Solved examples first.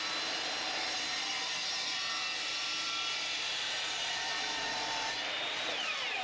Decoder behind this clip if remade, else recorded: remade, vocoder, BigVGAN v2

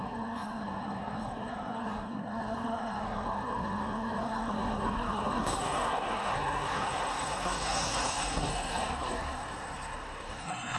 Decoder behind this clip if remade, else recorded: remade, codec, SNAC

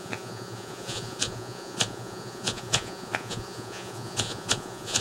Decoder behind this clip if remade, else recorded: remade, vocoder, Vocos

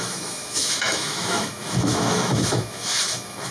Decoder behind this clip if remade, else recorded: remade, autoencoder, DAC-VAE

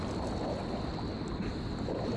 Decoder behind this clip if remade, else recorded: recorded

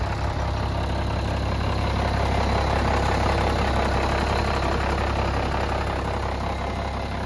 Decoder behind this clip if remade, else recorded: recorded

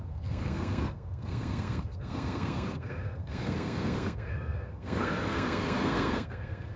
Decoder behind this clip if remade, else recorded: remade, codec, SNAC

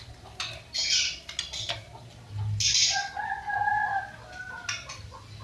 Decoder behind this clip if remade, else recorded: recorded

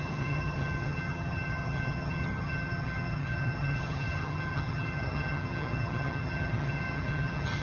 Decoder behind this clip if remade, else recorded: remade, vocoder, HiFi-GAN